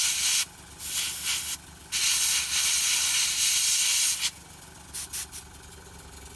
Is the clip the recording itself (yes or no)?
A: yes